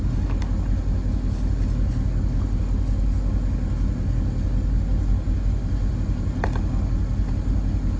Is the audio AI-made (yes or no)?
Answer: no